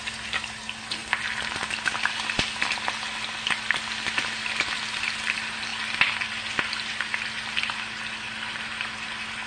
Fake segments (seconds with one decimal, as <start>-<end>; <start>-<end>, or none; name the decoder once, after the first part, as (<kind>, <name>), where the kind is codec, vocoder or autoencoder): none